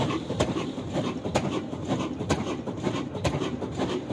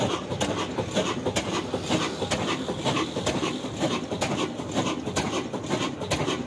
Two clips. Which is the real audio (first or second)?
second